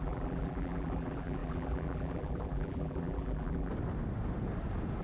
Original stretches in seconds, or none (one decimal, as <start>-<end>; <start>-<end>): 3.7-5.0